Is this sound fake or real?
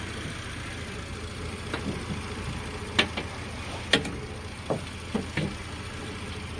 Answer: real